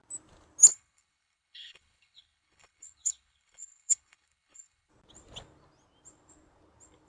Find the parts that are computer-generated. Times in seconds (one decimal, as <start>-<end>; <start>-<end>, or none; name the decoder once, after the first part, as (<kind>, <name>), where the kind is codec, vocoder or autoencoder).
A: 0.7-4.9 (codec, HILCodec)